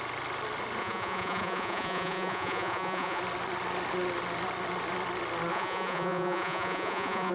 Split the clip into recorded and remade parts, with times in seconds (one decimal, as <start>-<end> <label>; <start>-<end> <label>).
0.0-0.8 recorded; 0.8-3.2 remade; 3.2-5.5 recorded; 5.5-7.3 remade